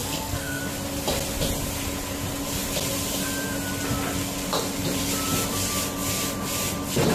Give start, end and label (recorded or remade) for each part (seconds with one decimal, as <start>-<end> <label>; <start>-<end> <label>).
0.0-0.6 remade; 0.6-7.1 recorded